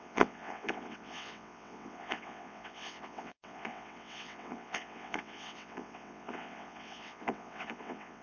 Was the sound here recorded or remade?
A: remade